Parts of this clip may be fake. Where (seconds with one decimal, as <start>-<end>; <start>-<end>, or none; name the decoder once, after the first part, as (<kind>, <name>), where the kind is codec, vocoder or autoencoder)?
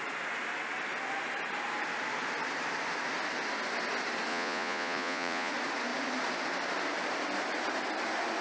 4.3-5.5 (vocoder, Vocos)